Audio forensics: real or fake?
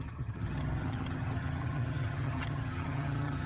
fake